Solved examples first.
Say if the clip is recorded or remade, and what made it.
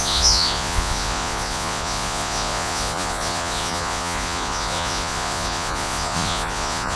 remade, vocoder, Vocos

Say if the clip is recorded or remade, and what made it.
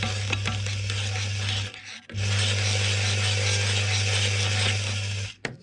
recorded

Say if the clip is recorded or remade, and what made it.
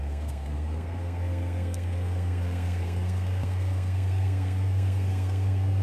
remade, codec, SNAC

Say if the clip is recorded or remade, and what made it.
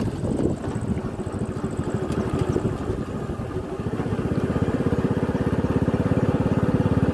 recorded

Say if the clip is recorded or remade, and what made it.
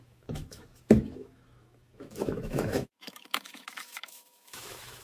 remade, autoencoder, DAC-VAE